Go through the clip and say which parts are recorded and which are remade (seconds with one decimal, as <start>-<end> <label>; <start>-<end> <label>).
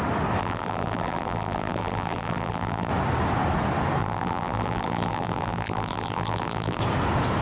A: 0.0-0.4 recorded; 0.4-2.9 remade; 2.9-4.0 recorded; 4.0-6.8 remade; 6.8-7.4 recorded